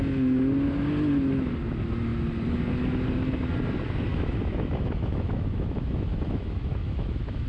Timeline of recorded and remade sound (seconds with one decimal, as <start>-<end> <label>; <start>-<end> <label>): 0.0-4.1 recorded; 4.1-7.5 remade